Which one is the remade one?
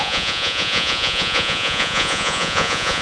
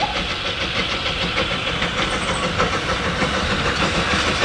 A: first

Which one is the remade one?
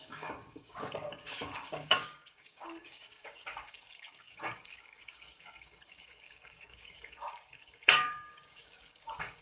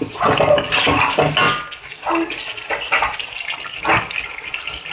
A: first